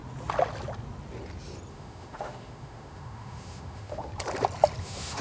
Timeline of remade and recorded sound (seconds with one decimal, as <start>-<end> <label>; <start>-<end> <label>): 0.0-1.7 recorded; 1.7-4.1 remade; 4.1-4.8 recorded; 4.8-5.2 remade